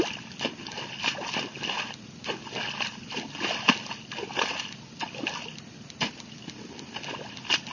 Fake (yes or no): no